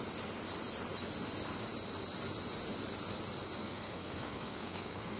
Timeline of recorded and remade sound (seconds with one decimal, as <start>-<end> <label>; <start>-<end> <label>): 0.0-3.6 recorded; 3.6-5.2 remade